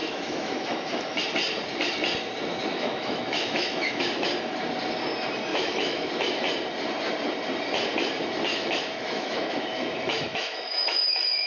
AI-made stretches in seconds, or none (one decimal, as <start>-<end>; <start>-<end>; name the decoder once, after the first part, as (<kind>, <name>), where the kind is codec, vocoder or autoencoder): 0.0-1.2 (autoencoder, DAC-VAE); 2.7-4.0; 5.5-6.1; 8.5-11.5